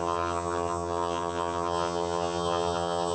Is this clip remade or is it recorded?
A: remade